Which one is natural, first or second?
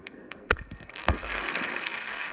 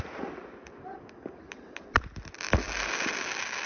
second